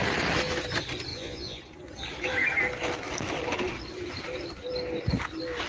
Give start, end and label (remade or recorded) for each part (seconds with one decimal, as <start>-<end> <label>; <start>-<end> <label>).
0.0-1.1 recorded; 1.1-1.6 remade; 1.6-5.7 recorded